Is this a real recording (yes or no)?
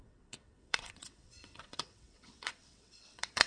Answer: no